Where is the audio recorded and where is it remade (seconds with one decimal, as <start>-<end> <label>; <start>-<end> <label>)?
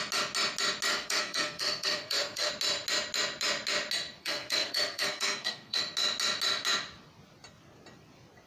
0.0-0.9 recorded; 0.9-2.5 remade; 2.5-4.2 recorded; 4.2-5.8 remade; 5.8-8.5 recorded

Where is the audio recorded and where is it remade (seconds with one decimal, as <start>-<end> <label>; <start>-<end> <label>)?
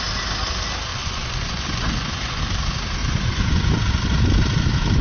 0.0-0.9 recorded; 0.9-2.4 remade; 2.4-3.0 recorded; 3.0-3.7 remade; 3.7-5.0 recorded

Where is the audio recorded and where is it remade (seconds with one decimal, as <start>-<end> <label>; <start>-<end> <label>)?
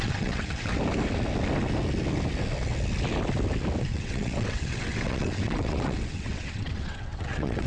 0.0-0.7 remade; 0.7-3.8 recorded; 3.8-7.7 remade